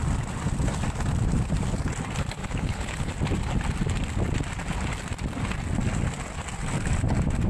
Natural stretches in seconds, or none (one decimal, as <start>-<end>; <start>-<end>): 0.0-2.4; 3.1-7.5

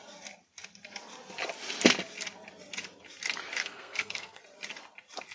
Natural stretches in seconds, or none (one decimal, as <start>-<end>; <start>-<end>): 0.0-3.6; 4.4-5.3

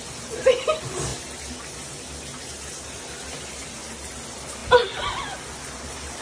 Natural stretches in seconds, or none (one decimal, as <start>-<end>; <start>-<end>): 0.0-6.2

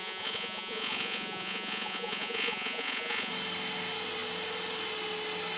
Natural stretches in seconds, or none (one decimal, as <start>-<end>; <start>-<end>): 3.3-5.6

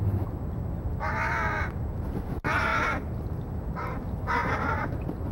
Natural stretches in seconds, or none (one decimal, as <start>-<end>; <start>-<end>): 0.0-4.4

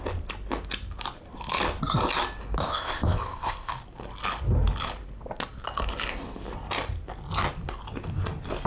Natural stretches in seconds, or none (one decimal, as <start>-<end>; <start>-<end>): 0.0-2.6; 3.7-8.7

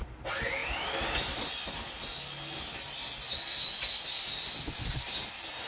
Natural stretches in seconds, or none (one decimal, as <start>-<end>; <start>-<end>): 0.0-5.7